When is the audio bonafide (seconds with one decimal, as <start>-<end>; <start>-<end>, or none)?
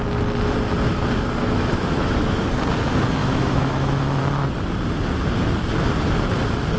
0.0-1.4; 2.4-3.2; 4.2-6.8